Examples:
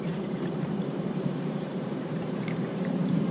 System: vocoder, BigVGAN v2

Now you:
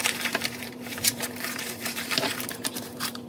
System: vocoder, BigVGAN v2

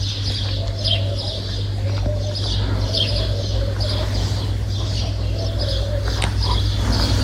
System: none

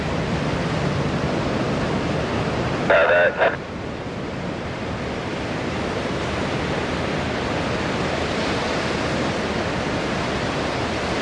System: vocoder, BigVGAN v2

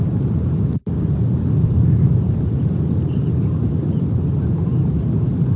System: vocoder, BigVGAN v2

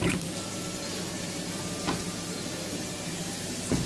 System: vocoder, BigVGAN v2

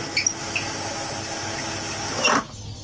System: none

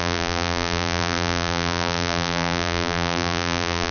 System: vocoder, BigVGAN v2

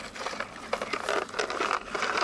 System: none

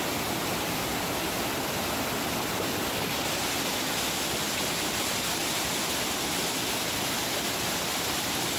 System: none